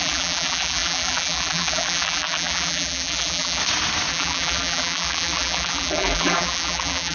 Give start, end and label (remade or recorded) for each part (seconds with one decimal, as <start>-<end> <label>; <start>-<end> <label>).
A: 0.0-3.6 remade; 3.6-4.1 recorded; 4.1-7.1 remade